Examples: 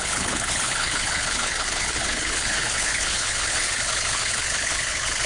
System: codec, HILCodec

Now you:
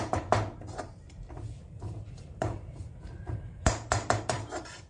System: vocoder, BigVGAN v2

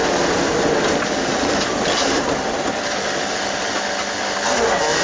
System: none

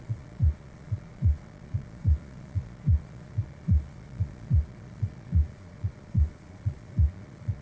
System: vocoder, Vocos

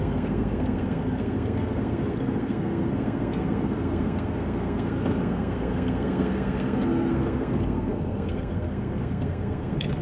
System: codec, SNAC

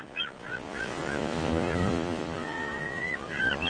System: vocoder, Vocos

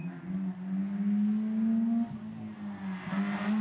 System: none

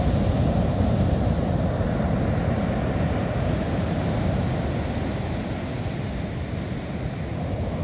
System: none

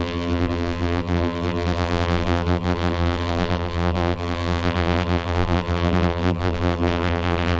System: vocoder, BigVGAN v2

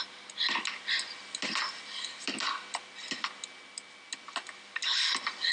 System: none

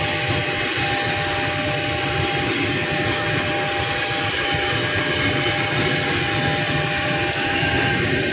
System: none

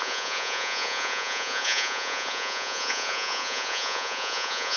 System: vocoder, Vocos